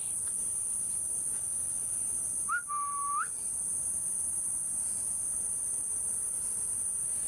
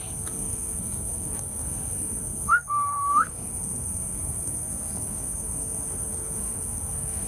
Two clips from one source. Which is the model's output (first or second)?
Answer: second